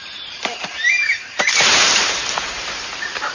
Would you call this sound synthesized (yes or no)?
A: yes